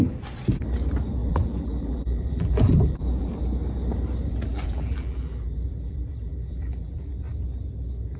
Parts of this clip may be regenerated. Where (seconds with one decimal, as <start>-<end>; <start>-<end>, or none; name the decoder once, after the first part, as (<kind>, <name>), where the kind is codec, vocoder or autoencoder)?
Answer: 1.2-3.3 (vocoder, BigVGAN v2); 4.5-7.1